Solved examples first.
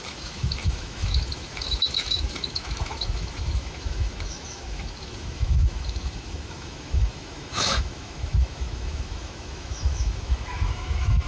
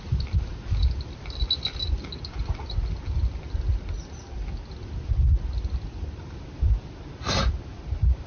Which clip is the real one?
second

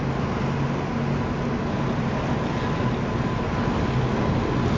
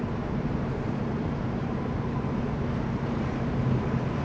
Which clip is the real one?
first